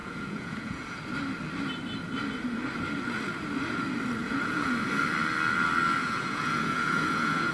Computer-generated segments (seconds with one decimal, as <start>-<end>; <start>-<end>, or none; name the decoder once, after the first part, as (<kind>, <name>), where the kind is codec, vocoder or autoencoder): 0.0-1.0 (vocoder, Vocos); 4.2-4.7; 6.0-7.5